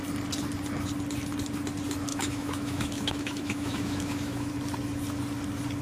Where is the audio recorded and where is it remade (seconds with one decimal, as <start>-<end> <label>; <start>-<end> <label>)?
0.0-2.1 recorded; 2.1-4.5 remade; 4.5-5.8 recorded